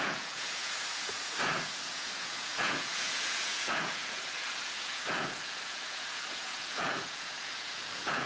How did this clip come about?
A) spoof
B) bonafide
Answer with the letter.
A